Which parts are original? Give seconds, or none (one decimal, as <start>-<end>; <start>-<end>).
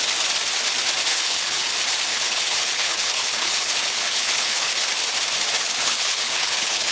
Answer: 0.0-1.1; 1.7-2.1; 4.7-5.6